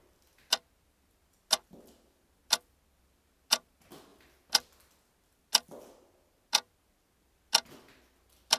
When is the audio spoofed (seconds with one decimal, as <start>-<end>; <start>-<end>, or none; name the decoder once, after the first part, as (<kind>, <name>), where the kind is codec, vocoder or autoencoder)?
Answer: none

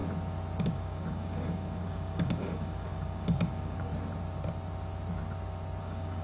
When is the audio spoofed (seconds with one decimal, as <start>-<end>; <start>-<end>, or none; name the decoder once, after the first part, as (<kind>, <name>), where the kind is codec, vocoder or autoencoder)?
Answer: 0.6-3.9 (codec, DAC); 5.8-6.2

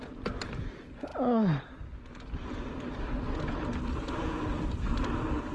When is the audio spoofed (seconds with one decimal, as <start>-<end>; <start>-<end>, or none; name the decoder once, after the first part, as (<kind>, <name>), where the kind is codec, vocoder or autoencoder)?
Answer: none

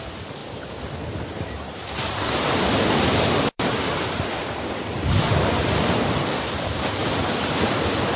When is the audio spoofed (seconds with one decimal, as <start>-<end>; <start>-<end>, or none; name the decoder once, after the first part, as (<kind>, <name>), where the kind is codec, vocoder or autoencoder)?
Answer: 0.0-0.4 (vocoder, BigVGAN v2); 1.4-8.2

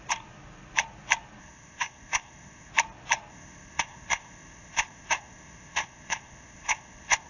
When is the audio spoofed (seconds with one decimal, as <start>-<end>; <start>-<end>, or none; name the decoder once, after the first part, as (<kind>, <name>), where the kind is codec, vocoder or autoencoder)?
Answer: 1.4-2.7 (codec, ZipCodec); 3.3-7.3

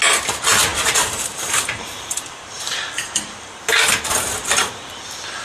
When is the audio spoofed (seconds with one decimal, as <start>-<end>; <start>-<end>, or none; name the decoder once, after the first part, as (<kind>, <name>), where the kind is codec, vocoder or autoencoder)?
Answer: 0.7-3.6 (vocoder, BigVGAN v2)